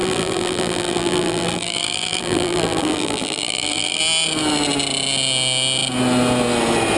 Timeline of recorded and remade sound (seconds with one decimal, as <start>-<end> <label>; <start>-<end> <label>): 0.0-4.0 remade; 4.0-7.0 recorded

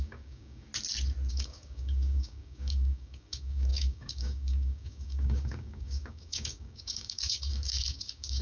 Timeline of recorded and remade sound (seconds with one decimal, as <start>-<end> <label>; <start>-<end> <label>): 0.0-0.7 remade; 0.7-1.3 recorded; 1.3-8.4 remade

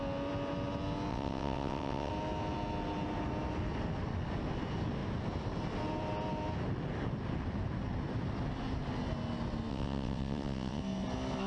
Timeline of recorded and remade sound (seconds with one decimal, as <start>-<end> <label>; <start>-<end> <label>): 0.0-1.1 recorded; 1.1-2.1 remade; 2.1-9.7 recorded; 9.7-10.8 remade; 10.8-11.5 recorded